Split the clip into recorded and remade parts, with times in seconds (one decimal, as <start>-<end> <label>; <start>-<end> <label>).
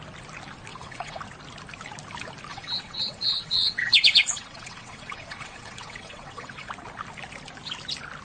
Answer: 0.0-0.7 recorded; 0.7-1.2 remade; 1.2-2.5 recorded; 2.5-6.7 remade; 6.7-8.2 recorded